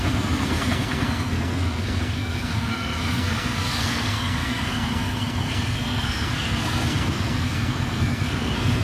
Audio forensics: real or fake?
fake